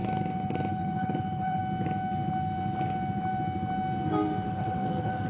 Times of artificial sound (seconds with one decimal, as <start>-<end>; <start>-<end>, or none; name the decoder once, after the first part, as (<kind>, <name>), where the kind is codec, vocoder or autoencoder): 0.7-1.6 (codec, HILCodec); 4.5-5.3